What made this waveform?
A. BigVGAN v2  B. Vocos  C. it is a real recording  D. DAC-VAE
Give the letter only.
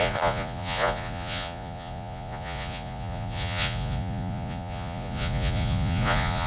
B